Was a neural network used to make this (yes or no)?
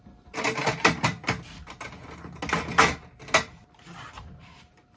no